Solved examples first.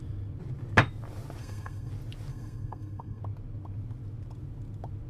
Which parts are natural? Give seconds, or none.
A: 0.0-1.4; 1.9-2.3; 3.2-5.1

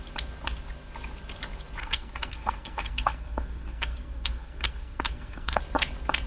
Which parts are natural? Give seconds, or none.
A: 0.0-1.8; 5.6-6.3

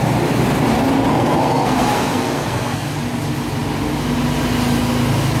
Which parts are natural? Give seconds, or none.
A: 0.0-1.1; 2.9-5.4

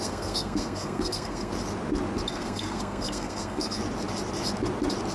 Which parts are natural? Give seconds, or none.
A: 1.5-2.3; 3.8-5.1

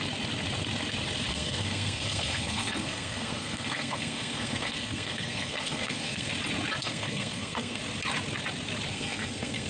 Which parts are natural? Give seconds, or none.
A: 0.0-1.3; 6.3-6.8; 7.8-8.9

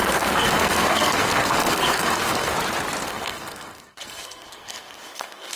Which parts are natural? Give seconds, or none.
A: 2.5-3.1

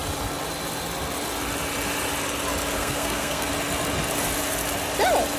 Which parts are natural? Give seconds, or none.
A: 0.0-2.8; 3.5-5.4